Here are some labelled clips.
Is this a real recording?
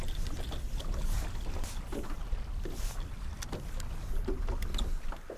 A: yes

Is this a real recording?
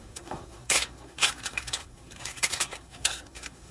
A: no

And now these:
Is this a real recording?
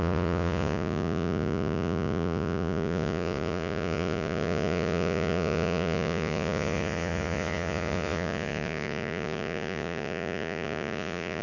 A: no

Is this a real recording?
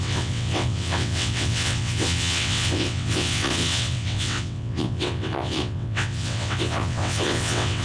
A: no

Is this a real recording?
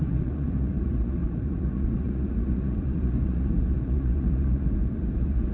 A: no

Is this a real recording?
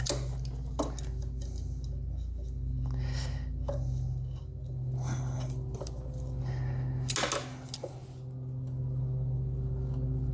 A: yes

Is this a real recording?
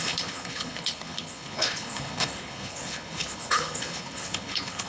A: no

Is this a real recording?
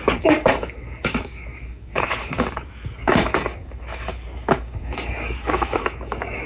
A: no